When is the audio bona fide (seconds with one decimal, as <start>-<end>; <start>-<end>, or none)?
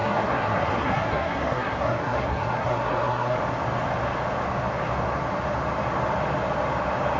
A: 3.4-7.2